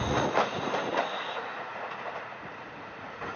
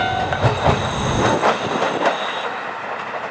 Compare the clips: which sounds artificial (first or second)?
first